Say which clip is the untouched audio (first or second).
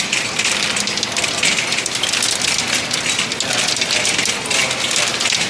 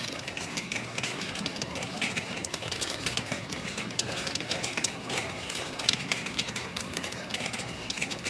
first